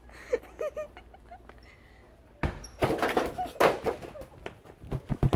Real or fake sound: real